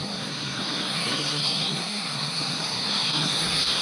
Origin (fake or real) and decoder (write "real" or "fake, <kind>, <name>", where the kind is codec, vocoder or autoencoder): fake, codec, SNAC